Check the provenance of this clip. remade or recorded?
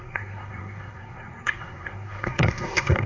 remade